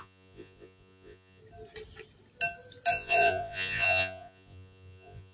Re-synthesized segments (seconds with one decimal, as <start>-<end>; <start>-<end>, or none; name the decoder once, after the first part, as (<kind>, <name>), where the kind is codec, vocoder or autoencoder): 0.0-1.4 (vocoder, Vocos); 2.9-5.3